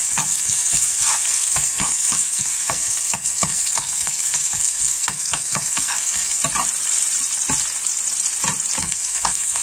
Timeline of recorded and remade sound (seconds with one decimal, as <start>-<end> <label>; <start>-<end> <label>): 0.0-6.4 remade; 6.4-8.8 recorded; 8.8-9.6 remade